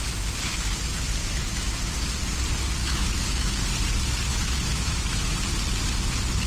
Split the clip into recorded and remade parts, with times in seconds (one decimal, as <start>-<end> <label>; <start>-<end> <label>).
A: 0.0-1.2 recorded; 1.2-1.8 remade; 1.8-2.8 recorded; 2.8-3.6 remade; 3.6-4.3 recorded; 4.3-5.4 remade; 5.4-6.5 recorded